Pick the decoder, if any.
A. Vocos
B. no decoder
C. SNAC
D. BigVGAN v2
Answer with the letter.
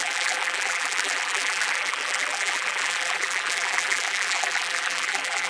D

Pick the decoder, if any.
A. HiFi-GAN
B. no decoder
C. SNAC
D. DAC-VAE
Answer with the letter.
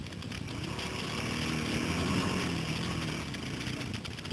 B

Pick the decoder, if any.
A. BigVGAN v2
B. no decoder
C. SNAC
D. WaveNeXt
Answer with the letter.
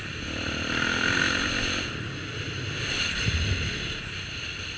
B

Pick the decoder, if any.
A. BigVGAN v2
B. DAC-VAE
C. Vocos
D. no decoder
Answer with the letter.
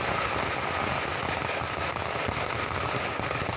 D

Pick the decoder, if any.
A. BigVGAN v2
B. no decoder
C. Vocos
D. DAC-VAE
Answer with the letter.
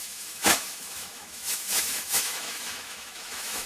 D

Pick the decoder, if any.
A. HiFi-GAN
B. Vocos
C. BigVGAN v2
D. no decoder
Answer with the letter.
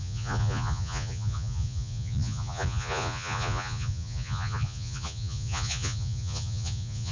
B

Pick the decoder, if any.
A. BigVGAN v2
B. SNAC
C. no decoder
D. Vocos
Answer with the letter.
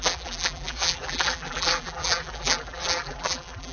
A